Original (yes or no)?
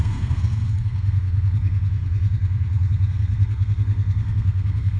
no